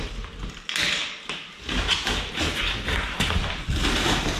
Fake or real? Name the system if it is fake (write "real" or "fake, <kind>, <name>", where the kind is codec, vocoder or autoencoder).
real